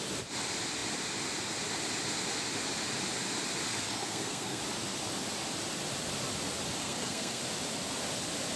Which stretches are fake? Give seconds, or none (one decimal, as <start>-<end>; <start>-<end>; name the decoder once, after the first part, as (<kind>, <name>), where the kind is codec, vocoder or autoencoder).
3.7-4.6 (codec, SNAC); 6.8-7.4

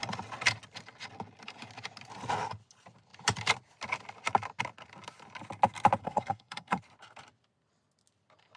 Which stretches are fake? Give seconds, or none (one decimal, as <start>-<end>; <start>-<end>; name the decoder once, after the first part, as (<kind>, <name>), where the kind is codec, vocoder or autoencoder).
6.0-6.8 (codec, SNAC)

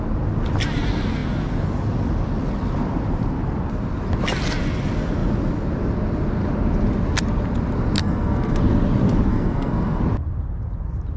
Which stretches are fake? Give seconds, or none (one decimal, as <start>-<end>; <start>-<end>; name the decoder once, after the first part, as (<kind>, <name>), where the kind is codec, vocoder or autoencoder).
8.0-8.6 (codec, SNAC); 9.3-10.0

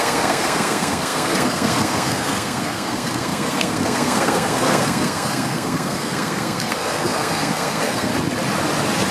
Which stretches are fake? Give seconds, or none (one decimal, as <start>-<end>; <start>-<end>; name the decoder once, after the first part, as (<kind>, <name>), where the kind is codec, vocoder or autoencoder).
0.0-8.1 (codec, SNAC)